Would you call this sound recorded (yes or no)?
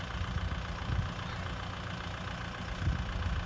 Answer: yes